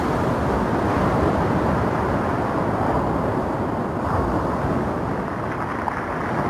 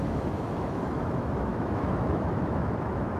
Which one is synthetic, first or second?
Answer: second